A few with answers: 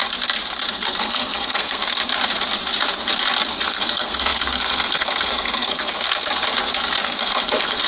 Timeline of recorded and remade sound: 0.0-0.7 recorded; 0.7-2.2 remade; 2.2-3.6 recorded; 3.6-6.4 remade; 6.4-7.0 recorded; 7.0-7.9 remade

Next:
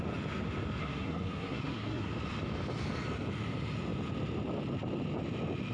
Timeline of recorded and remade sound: 0.0-0.8 recorded; 0.8-2.1 remade; 2.1-5.7 recorded

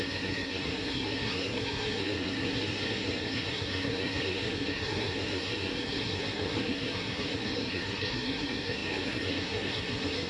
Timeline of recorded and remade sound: 0.0-10.3 remade